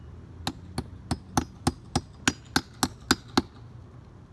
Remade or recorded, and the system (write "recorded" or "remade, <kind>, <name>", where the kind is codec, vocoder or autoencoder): recorded